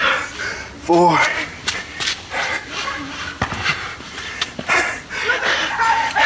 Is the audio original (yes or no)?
yes